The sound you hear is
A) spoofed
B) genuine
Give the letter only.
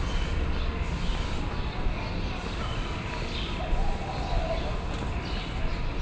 B